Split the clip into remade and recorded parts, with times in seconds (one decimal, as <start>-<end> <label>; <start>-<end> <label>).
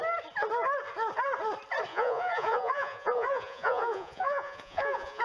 0.0-1.9 recorded; 1.9-5.2 remade